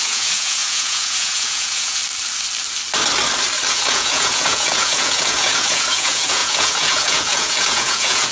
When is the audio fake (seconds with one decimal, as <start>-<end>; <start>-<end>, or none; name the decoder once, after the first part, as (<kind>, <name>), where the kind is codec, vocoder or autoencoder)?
0.0-2.0 (vocoder, Vocos); 3.7-8.3